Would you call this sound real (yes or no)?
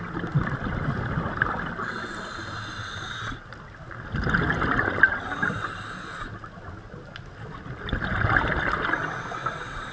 yes